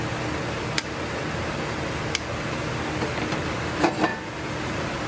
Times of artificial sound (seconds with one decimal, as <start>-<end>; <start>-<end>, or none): 4.1-5.1